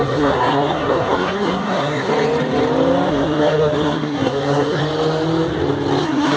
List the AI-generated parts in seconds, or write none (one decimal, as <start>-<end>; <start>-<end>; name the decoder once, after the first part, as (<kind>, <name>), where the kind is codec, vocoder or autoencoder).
0.0-2.1 (codec, SNAC); 3.1-4.8; 6.0-6.4